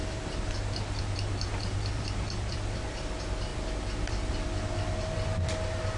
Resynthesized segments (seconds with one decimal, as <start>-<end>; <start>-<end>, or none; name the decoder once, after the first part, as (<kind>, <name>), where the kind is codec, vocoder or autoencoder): 0.0-6.0 (vocoder, BigVGAN v2)